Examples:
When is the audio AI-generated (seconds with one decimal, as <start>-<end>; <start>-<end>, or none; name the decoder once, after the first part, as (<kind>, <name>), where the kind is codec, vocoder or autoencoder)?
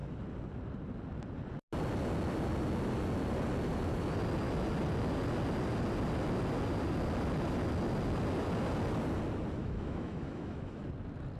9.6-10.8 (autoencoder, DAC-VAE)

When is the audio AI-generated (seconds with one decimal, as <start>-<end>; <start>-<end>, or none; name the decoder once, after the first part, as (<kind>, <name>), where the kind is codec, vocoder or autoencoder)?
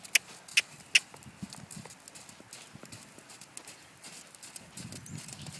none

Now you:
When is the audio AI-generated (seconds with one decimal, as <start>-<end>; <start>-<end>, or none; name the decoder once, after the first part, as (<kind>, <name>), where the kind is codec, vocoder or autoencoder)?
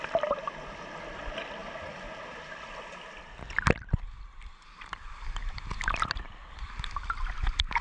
none